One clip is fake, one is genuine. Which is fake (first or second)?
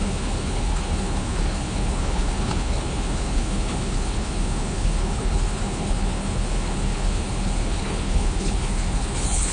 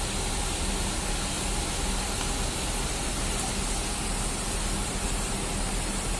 first